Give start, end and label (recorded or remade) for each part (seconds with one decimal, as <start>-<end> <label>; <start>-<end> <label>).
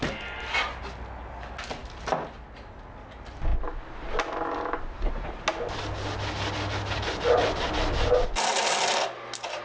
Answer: 0.0-9.6 recorded